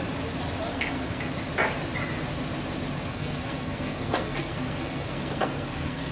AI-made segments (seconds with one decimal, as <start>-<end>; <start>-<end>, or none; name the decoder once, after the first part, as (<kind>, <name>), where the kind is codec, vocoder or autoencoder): 0.7-1.3 (codec, SNAC); 3.1-6.1